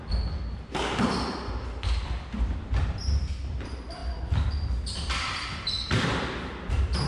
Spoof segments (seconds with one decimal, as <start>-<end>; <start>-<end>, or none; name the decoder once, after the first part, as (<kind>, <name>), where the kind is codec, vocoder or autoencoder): none